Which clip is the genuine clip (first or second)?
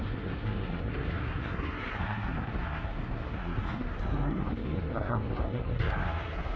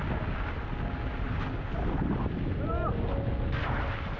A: second